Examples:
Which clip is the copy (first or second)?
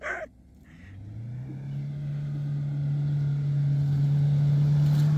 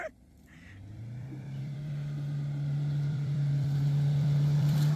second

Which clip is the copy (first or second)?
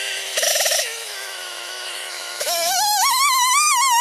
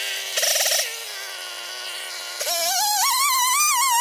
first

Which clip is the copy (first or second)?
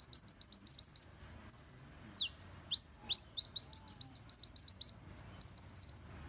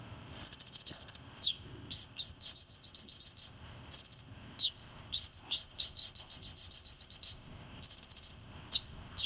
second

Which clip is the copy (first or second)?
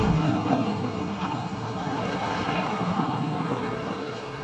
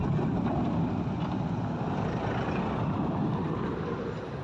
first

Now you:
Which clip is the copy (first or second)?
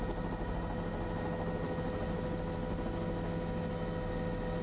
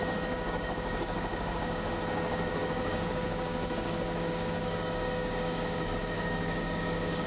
second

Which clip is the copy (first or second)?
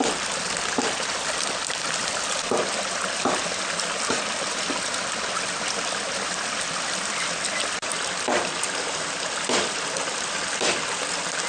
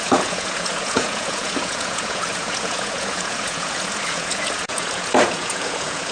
second